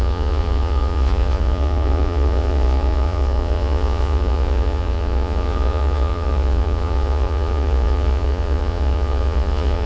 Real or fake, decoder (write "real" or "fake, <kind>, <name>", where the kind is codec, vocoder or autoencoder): fake, vocoder, Vocos